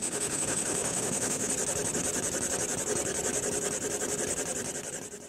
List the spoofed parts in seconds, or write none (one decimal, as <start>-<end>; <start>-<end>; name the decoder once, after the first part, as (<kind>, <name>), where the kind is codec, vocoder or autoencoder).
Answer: 0.0-1.5 (autoencoder, DAC-VAE)